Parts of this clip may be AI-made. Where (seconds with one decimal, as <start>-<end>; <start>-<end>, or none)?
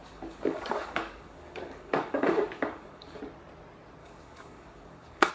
0.0-3.2; 4.0-5.3